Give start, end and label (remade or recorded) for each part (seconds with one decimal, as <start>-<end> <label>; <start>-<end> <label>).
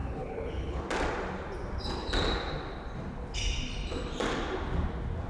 0.0-0.8 remade; 0.8-5.3 recorded